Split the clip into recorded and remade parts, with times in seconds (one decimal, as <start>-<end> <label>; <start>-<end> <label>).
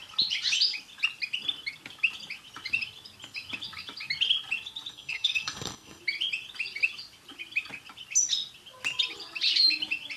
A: 0.0-4.9 recorded; 4.9-6.0 remade; 6.0-10.2 recorded